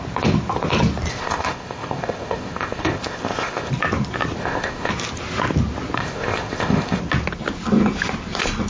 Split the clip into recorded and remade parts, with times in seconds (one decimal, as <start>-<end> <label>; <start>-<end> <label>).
0.0-1.1 recorded; 1.1-3.7 remade; 3.7-4.4 recorded; 4.4-4.9 remade; 4.9-6.0 recorded; 6.0-7.0 remade; 7.0-8.7 recorded